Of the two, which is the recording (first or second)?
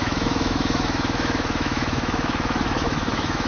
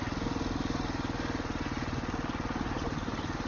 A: second